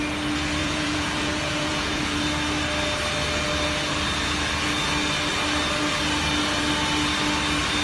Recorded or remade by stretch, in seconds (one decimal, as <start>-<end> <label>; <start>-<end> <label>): 0.0-0.6 recorded; 0.6-2.2 remade; 2.2-7.8 recorded